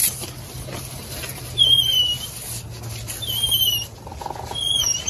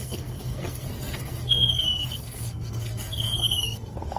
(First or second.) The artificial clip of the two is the second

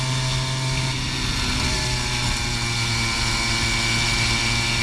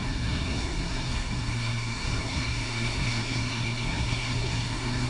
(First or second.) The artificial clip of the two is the second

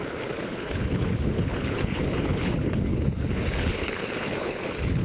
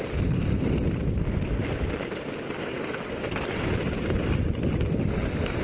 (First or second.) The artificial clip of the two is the first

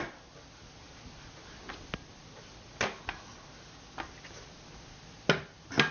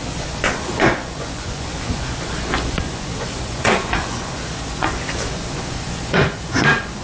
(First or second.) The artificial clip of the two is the second